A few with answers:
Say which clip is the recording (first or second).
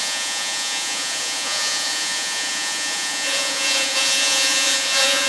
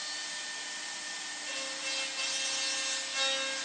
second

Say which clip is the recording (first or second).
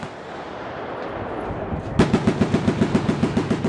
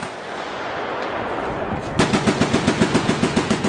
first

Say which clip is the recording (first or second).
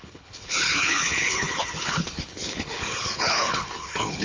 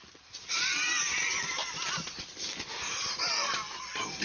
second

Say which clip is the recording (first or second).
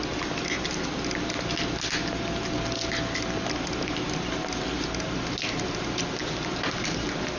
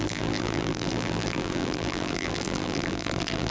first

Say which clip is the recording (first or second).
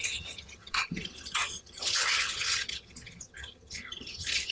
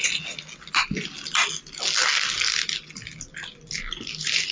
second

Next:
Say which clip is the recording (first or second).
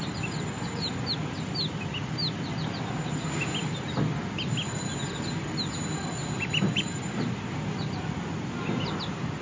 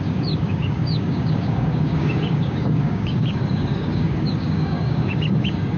first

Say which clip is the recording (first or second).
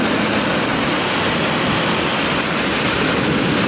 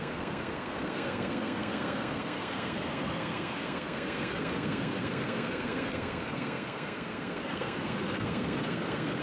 first